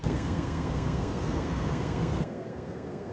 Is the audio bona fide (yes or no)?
no